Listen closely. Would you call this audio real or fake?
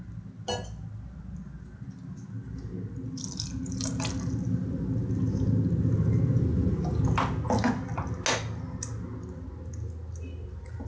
real